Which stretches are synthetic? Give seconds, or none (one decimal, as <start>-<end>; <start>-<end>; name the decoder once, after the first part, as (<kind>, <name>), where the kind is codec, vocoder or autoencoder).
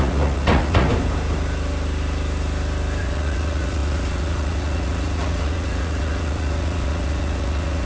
0.0-0.9 (vocoder, Vocos); 3.0-7.9